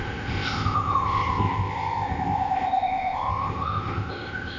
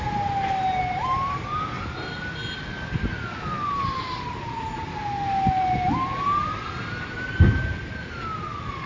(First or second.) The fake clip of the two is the first